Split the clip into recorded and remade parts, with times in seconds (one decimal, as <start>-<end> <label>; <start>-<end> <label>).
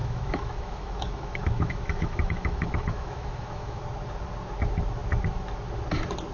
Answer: 0.0-3.8 remade; 3.8-6.3 recorded